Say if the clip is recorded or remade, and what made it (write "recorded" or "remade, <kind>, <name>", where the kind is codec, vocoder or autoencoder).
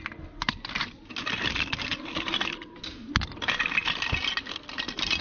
recorded